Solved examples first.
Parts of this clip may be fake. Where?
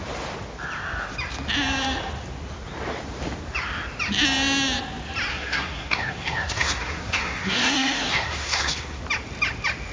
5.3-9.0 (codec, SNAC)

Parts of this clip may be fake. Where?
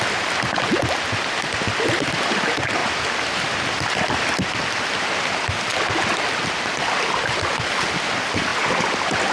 none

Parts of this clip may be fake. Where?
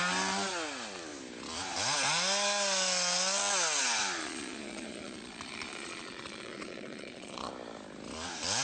4.2-7.5 (vocoder, Vocos)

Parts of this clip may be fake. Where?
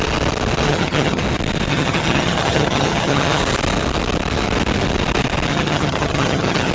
0.7-1.2 (vocoder, HiFi-GAN); 1.7-3.4; 5.5-6.7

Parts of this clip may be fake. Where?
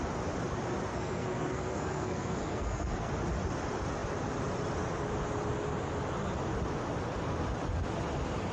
0.9-3.1 (codec, SNAC)